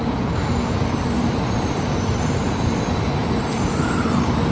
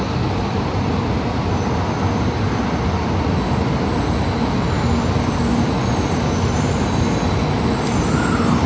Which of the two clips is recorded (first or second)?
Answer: second